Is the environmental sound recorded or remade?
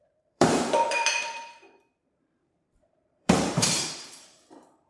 remade